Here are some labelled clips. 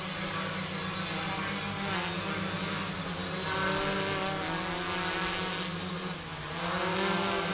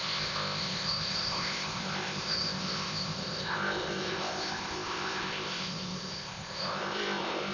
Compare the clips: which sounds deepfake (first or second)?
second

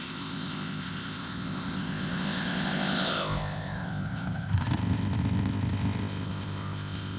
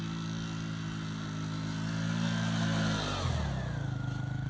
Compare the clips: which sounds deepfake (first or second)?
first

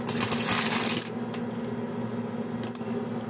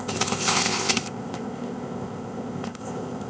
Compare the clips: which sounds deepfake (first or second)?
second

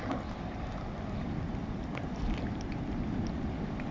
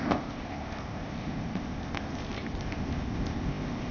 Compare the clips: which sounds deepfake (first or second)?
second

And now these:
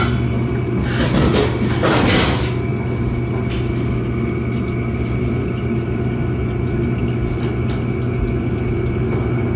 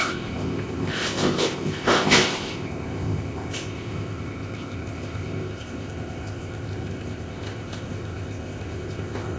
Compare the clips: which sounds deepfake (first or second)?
second